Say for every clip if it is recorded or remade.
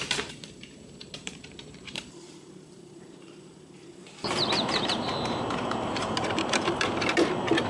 remade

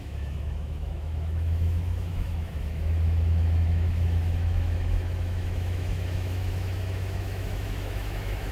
remade